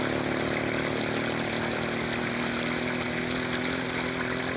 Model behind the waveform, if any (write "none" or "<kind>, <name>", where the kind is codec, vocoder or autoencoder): none